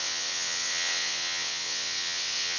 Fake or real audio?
fake